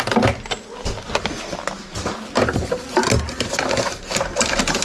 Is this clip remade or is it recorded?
recorded